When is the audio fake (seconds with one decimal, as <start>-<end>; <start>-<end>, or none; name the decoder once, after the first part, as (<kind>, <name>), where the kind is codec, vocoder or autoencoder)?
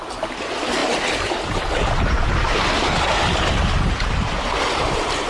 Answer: none